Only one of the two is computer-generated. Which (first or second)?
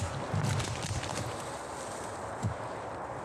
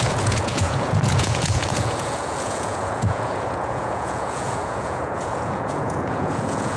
second